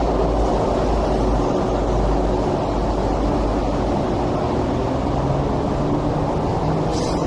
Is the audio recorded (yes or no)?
yes